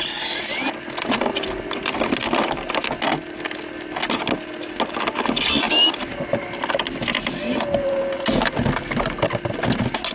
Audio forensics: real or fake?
real